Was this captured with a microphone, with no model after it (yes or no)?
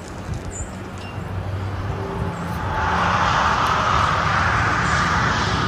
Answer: yes